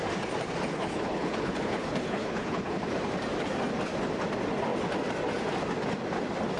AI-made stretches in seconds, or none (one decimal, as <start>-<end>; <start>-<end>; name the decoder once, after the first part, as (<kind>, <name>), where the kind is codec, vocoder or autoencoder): 0.7-2.8 (codec, HILCodec)